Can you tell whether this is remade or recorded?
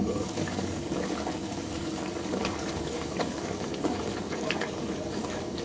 remade